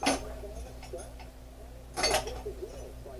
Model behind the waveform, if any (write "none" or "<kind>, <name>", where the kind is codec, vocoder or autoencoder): none